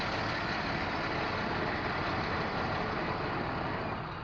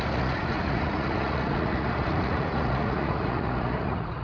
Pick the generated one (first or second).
second